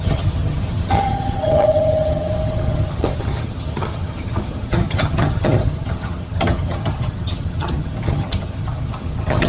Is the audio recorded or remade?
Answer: remade